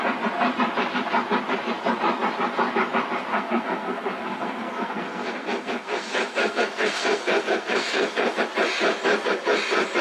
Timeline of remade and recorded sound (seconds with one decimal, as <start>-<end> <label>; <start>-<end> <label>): 0.0-3.3 recorded; 3.3-8.4 remade; 8.4-10.0 recorded